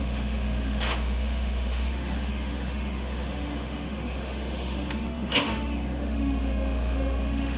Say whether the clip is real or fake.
fake